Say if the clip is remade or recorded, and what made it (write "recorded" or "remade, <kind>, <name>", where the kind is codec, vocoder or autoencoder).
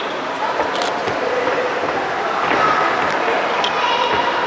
recorded